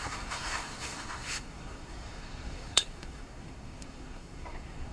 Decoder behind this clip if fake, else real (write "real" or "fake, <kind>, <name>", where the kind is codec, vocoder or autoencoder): fake, codec, SNAC